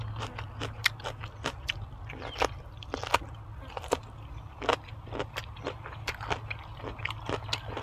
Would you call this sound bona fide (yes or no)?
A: yes